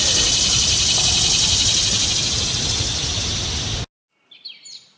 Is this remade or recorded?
recorded